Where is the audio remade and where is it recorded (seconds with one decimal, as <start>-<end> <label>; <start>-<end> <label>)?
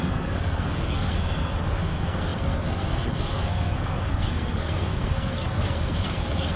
0.0-6.6 remade